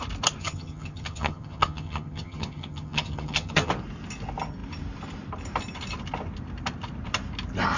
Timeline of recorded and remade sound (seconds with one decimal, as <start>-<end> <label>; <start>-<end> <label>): 0.0-0.4 recorded; 0.4-3.7 remade; 3.7-7.8 recorded